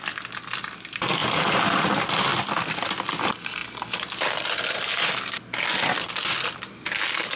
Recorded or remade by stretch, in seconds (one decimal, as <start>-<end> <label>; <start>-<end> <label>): 0.0-7.4 recorded